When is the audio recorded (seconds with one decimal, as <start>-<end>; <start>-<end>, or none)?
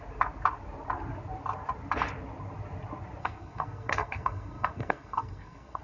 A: 0.0-3.2